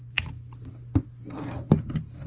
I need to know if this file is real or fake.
real